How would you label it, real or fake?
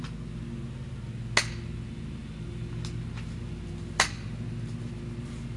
real